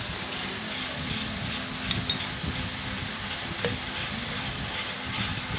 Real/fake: real